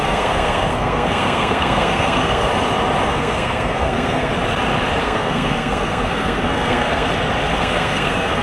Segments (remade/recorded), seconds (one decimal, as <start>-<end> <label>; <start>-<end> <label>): 0.0-2.5 remade; 2.5-3.1 recorded; 3.1-4.3 remade; 4.3-5.0 recorded; 5.0-7.1 remade; 7.1-7.6 recorded; 7.6-8.4 remade